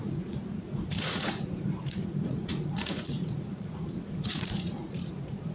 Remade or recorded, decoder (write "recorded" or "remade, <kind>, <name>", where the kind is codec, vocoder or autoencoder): remade, vocoder, Vocos